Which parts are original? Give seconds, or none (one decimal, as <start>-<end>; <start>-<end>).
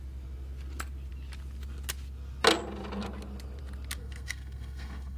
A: 0.0-4.0